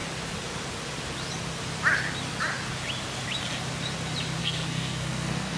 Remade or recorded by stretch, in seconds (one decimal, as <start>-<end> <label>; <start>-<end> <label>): 0.0-4.4 recorded; 4.4-5.6 remade